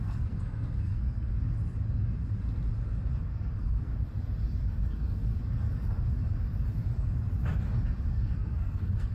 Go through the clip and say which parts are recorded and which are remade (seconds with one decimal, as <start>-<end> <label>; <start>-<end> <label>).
0.0-1.3 remade; 1.3-3.2 recorded; 3.2-3.9 remade; 3.9-4.7 recorded; 4.7-5.3 remade; 5.3-8.1 recorded; 8.1-9.1 remade